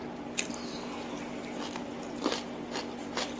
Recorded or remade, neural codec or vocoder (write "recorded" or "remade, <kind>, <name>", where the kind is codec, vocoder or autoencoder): recorded